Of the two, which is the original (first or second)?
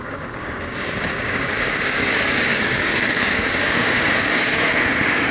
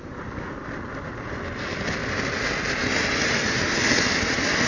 second